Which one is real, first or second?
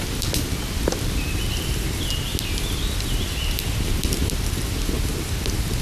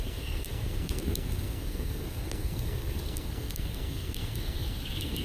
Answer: first